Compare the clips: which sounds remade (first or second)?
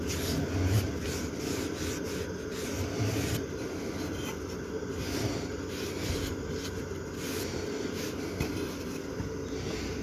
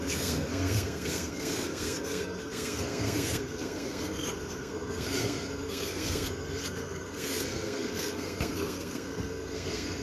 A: second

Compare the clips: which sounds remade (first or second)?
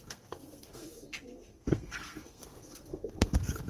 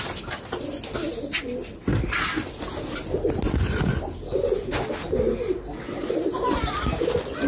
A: first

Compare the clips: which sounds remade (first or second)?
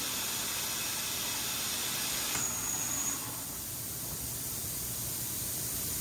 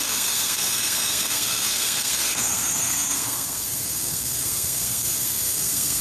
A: second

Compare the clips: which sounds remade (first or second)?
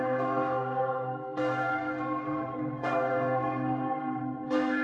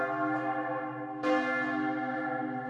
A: first